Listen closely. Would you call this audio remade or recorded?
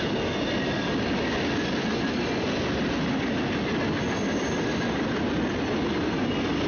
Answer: recorded